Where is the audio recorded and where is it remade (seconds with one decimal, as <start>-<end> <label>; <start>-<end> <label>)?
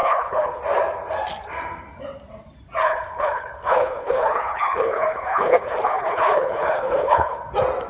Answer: 0.0-0.6 remade; 0.6-2.8 recorded; 2.8-7.4 remade; 7.4-7.9 recorded